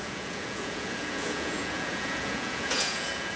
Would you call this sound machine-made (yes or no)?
yes